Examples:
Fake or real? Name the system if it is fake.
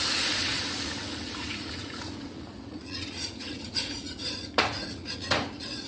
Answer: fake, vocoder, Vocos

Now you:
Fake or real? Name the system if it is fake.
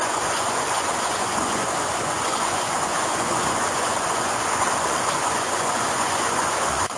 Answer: fake, vocoder, Vocos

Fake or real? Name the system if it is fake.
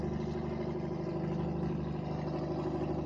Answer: real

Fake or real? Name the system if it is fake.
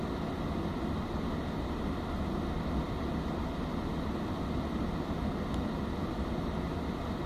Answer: real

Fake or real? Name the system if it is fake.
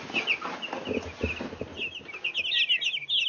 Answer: real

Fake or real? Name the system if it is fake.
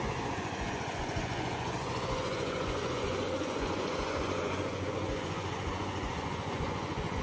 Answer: fake, vocoder, Vocos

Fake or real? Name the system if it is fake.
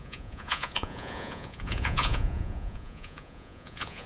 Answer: fake, vocoder, Vocos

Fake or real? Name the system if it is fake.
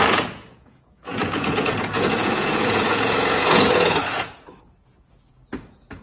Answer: fake, vocoder, Vocos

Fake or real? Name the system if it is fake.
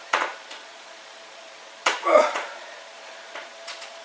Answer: fake, vocoder, Vocos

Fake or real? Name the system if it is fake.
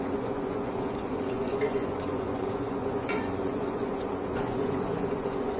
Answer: fake, vocoder, Vocos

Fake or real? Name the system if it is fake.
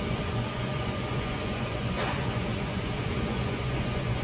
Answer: fake, vocoder, Vocos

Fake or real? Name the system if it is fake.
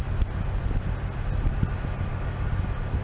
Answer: real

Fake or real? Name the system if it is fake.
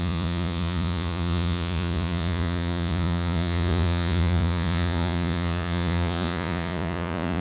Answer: fake, vocoder, Vocos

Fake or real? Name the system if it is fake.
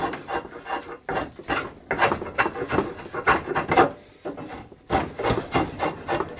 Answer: real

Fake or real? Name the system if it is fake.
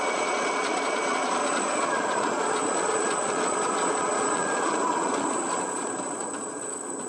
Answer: fake, vocoder, Vocos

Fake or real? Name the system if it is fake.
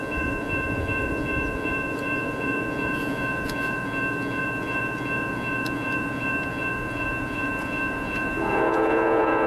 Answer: fake, vocoder, Vocos